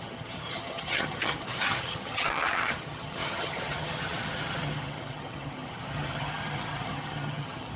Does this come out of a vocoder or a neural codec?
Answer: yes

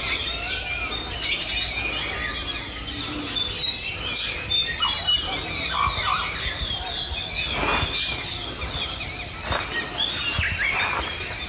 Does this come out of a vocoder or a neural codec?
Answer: no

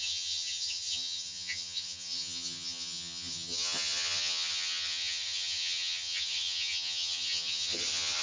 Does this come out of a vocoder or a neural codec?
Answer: yes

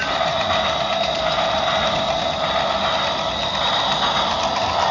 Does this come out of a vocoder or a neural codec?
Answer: no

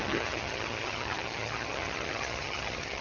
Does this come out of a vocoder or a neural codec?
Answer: yes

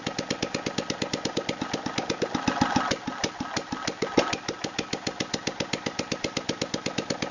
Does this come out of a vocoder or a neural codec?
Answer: no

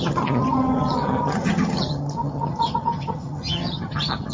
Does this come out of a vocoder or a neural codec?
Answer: yes